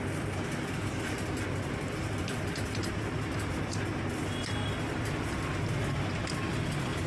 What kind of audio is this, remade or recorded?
recorded